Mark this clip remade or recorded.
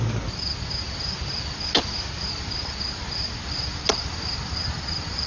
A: recorded